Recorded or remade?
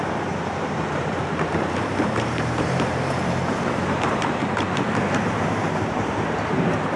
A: remade